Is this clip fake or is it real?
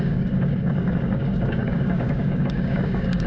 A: fake